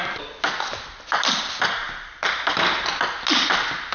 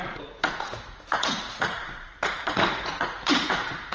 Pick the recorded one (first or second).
first